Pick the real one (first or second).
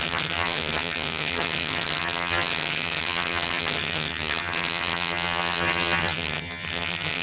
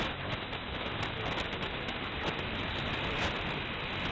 second